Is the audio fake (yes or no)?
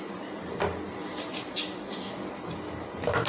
no